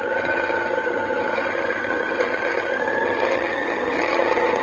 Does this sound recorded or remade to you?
remade